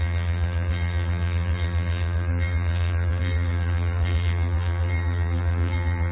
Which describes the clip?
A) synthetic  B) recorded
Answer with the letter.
A